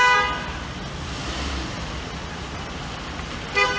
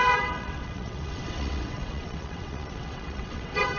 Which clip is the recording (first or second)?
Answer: first